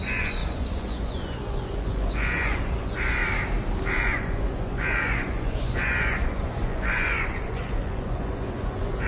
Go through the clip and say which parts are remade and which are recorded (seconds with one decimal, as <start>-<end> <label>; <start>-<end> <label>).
0.0-3.2 remade; 3.2-4.0 recorded; 4.0-9.1 remade